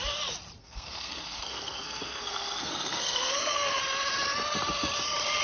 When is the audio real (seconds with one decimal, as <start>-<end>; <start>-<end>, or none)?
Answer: 0.0-0.6; 3.8-5.4